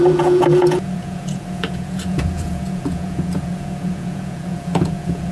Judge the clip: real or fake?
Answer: fake